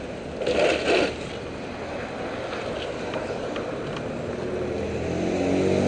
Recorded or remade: recorded